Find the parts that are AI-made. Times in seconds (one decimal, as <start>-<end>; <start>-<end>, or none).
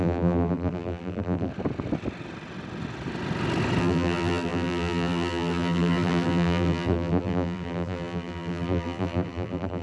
0.0-1.5; 3.8-9.8